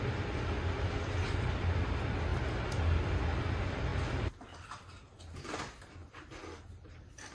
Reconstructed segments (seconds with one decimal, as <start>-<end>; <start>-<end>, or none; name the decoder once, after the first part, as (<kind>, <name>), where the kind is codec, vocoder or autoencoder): none